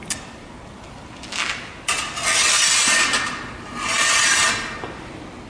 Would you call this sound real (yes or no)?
yes